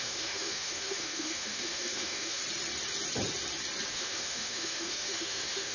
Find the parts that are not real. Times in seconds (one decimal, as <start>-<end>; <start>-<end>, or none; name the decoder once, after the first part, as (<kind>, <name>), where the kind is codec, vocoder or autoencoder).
0.0-2.4 (autoencoder, DAC-VAE); 3.9-5.7